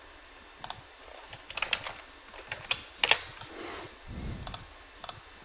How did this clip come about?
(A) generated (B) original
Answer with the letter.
B